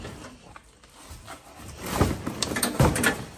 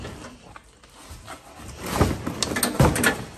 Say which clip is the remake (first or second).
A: first